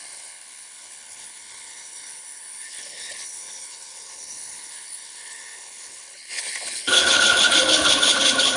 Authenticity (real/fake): fake